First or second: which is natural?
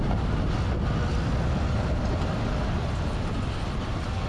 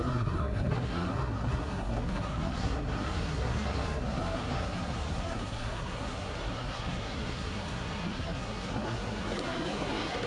first